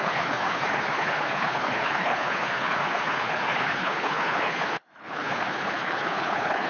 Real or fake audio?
fake